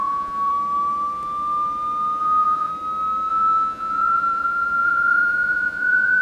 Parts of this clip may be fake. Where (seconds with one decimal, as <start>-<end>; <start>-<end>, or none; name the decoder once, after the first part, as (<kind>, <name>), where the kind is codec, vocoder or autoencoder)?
0.0-0.5 (vocoder, Vocos); 2.2-2.7; 3.3-6.2